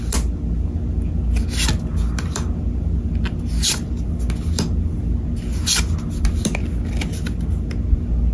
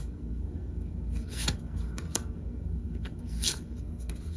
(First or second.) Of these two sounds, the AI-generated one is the second